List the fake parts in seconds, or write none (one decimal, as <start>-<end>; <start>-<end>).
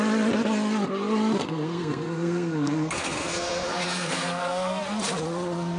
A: 1.4-4.8